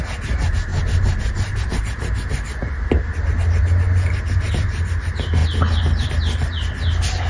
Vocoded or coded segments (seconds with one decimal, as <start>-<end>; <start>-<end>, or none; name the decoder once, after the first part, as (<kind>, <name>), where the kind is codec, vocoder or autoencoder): none